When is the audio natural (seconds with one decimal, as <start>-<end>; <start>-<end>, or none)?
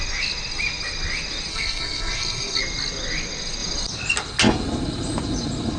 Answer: 0.0-1.5; 2.6-5.8